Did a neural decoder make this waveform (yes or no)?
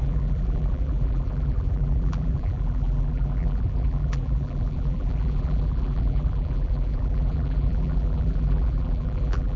yes